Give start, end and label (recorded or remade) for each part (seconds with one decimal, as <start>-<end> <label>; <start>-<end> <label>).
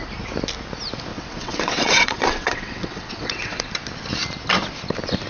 0.0-1.1 recorded; 1.1-3.6 remade; 3.6-5.3 recorded